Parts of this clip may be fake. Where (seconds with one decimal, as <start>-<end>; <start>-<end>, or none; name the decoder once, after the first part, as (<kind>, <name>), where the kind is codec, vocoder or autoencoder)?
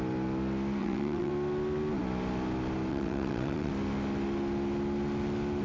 0.8-1.3 (vocoder, WaveNeXt); 2.9-3.7